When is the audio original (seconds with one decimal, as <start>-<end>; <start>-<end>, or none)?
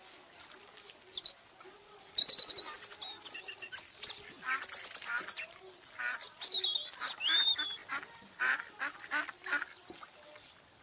0.0-10.8